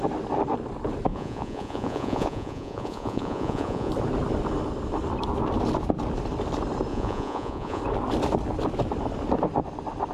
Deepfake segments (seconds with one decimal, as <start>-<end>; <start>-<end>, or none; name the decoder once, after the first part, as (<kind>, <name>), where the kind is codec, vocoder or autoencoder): 1.1-3.9 (vocoder, Vocos); 6.9-7.8